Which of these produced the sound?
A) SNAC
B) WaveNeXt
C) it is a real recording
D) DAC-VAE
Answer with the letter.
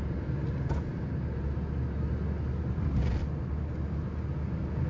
C